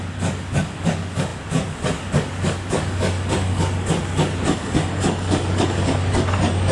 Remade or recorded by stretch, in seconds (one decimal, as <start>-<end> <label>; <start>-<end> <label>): 0.0-6.7 remade